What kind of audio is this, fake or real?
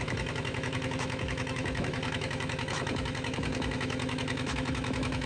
fake